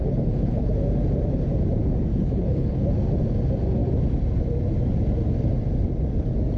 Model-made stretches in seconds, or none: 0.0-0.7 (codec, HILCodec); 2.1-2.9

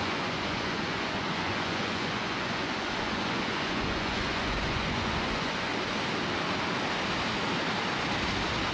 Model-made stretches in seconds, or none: 0.0-5.7 (vocoder, Vocos)